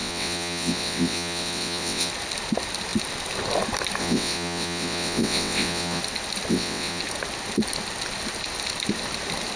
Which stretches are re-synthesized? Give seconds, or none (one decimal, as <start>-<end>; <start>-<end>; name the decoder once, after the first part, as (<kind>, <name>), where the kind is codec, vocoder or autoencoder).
0.0-2.1 (vocoder, WaveNeXt); 4.0-6.0; 6.5-7.0